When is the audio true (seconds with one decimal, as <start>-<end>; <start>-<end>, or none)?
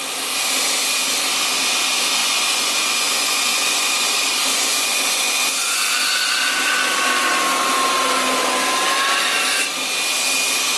0.0-2.2; 4.1-4.5; 5.8-10.8